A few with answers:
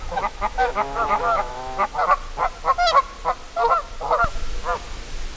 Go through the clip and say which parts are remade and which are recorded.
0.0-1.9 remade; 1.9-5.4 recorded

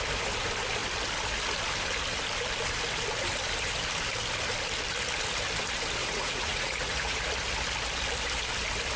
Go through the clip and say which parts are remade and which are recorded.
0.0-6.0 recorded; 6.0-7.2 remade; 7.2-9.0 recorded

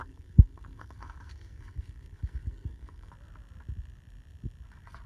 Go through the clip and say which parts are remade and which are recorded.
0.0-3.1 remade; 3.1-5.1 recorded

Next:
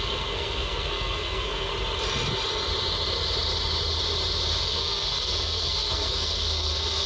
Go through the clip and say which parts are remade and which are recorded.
0.0-1.7 remade; 1.7-4.6 recorded; 4.6-7.1 remade

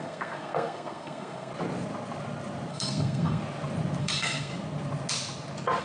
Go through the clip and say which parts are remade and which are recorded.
0.0-1.5 remade; 1.5-2.7 recorded; 2.7-3.4 remade; 3.4-4.0 recorded; 4.0-4.5 remade; 4.5-5.8 recorded